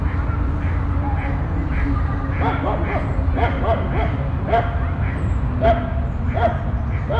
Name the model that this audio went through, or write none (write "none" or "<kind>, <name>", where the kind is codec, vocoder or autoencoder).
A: none